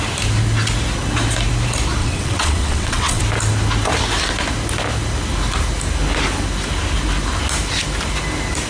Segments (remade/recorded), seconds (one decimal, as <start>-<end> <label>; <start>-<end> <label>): 0.0-2.0 recorded; 2.0-3.2 remade; 3.2-8.7 recorded